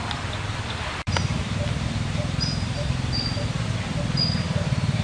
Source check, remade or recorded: remade